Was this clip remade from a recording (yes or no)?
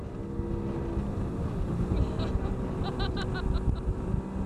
no